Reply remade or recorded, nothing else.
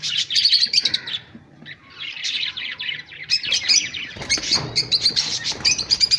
remade